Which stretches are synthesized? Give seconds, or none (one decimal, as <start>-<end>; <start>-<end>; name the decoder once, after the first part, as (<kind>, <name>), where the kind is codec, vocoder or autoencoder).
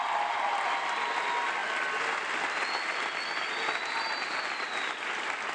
none